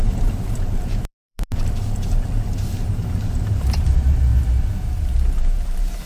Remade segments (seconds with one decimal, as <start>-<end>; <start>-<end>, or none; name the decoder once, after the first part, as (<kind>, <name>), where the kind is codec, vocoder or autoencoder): 0.0-4.3 (vocoder, BigVGAN v2); 5.0-6.1